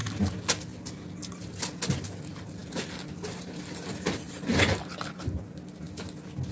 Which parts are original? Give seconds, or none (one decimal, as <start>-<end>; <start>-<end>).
0.0-6.5